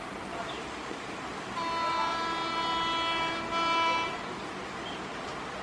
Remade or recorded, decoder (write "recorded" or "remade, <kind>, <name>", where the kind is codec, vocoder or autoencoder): recorded